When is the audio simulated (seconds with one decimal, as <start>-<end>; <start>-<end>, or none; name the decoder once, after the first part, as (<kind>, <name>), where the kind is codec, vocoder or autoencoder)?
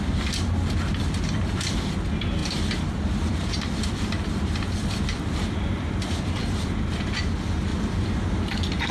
2.4-6.3 (vocoder, BigVGAN v2); 7.7-8.9